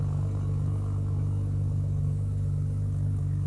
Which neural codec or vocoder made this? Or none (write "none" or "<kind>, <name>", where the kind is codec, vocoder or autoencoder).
codec, DAC